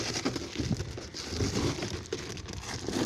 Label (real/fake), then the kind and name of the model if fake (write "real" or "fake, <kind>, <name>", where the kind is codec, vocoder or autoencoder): real